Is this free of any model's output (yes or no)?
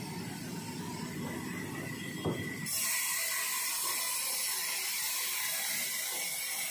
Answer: yes